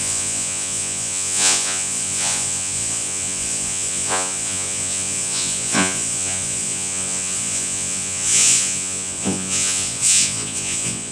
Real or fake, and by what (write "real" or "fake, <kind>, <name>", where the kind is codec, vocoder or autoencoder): fake, vocoder, Vocos